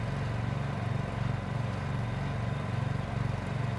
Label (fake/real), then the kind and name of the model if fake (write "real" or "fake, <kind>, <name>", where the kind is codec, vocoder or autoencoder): real